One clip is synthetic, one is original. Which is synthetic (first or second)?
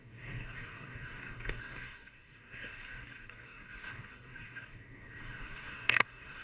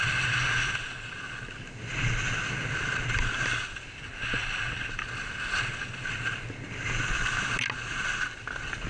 first